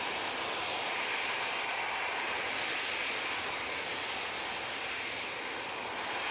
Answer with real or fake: real